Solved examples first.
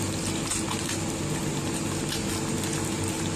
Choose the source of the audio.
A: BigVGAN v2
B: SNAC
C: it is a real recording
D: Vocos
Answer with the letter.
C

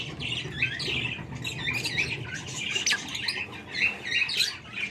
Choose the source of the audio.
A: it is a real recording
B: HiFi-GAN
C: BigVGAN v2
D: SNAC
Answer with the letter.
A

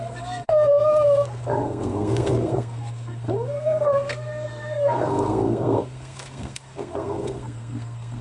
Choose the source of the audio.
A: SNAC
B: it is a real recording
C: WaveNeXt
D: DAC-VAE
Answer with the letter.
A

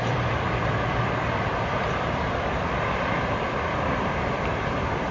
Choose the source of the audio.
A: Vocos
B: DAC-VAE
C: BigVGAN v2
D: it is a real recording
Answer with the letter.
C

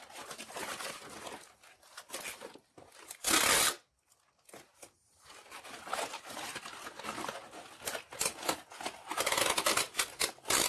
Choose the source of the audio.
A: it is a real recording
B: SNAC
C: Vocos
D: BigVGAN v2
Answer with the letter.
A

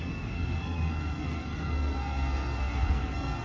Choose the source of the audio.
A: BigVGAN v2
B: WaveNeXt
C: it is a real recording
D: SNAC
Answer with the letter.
D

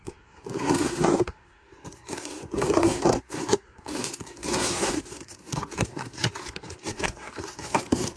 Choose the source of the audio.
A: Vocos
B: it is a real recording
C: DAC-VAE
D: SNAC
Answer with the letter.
D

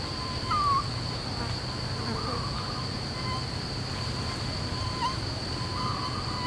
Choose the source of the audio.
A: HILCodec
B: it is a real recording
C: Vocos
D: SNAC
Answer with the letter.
B